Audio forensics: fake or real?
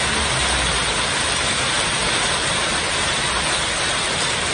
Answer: real